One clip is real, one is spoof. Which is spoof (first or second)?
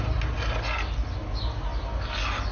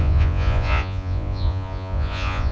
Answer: second